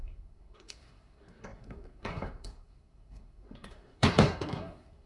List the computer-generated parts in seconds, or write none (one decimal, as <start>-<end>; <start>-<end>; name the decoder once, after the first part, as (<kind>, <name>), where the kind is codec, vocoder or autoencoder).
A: 0.0-5.1 (codec, SNAC)